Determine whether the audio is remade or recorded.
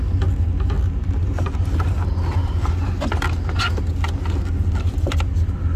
recorded